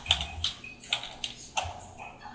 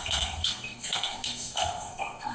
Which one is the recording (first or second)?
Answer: first